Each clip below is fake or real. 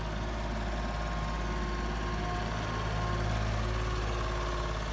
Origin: real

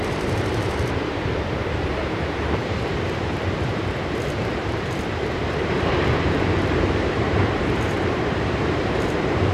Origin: fake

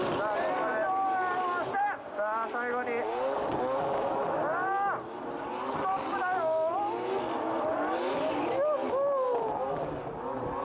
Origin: real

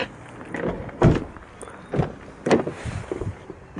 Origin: real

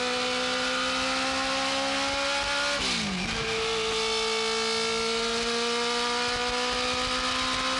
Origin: real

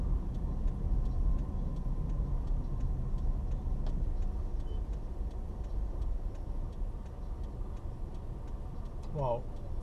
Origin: real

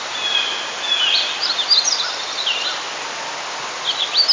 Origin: real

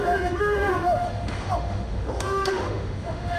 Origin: fake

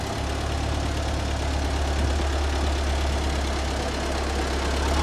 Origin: real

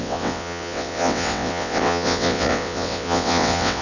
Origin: fake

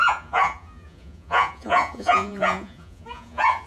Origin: fake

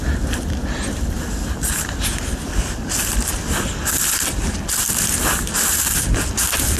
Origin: real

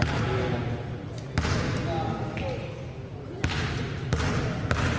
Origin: real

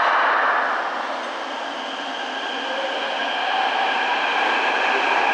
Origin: real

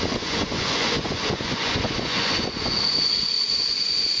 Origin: fake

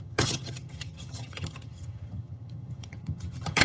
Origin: fake